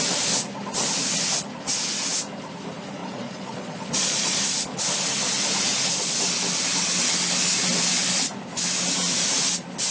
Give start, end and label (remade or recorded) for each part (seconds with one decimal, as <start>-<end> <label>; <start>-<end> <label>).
0.0-3.0 recorded; 3.0-4.4 remade; 4.4-9.9 recorded